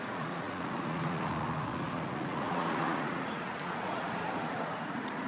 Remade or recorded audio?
remade